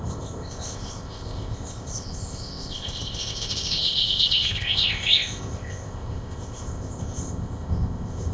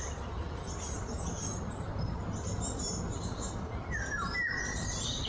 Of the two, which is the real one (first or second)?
second